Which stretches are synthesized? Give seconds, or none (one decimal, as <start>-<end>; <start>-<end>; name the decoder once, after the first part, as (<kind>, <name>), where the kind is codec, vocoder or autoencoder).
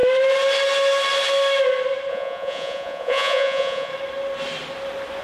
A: 2.1-3.9 (vocoder, Vocos)